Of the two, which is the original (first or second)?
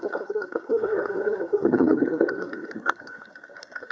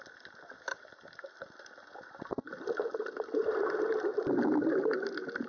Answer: second